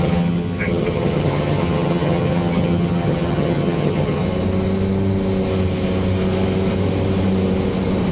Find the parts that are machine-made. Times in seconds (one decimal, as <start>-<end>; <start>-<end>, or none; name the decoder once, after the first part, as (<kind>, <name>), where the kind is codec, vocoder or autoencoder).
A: 0.0-4.2 (vocoder, HiFi-GAN)